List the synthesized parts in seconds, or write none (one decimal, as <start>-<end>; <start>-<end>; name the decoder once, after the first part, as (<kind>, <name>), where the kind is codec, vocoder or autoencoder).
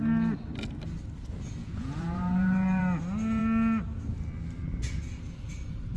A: 1.6-2.8 (vocoder, Vocos)